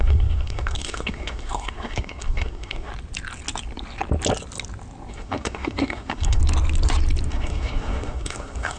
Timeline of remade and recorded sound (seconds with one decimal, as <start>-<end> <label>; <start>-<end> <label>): 0.0-2.9 remade; 2.9-5.1 recorded; 5.1-6.4 remade; 6.4-7.3 recorded; 7.3-8.8 remade